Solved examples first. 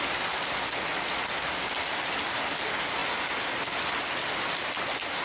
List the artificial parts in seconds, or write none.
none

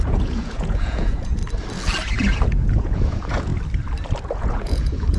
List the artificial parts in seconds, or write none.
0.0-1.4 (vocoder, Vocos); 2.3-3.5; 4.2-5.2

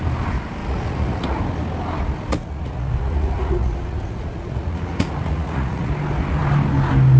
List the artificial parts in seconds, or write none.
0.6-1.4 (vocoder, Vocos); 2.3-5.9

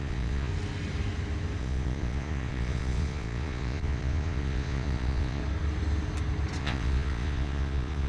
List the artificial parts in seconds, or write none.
0.0-0.5 (vocoder, Vocos); 1.6-5.4; 6.6-8.1

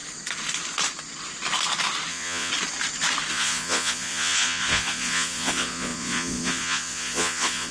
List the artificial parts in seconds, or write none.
2.1-2.5 (vocoder, Vocos); 3.3-7.7

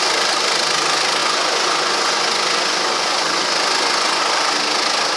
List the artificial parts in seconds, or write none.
1.2-4.2 (vocoder, Vocos)

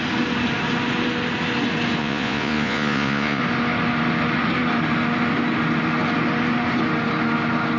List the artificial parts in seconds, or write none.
2.0-3.4 (vocoder, Vocos)